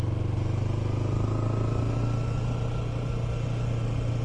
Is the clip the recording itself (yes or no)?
yes